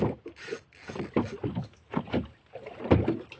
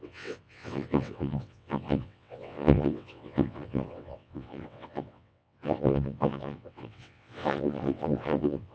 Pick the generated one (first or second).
second